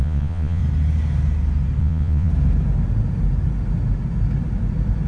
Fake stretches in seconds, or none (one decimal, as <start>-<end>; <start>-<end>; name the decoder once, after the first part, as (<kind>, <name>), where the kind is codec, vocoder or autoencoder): 0.0-0.6 (vocoder, Vocos); 1.8-2.3